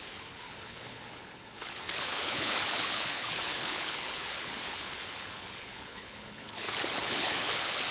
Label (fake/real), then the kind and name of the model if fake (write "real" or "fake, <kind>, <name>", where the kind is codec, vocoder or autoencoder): fake, codec, HILCodec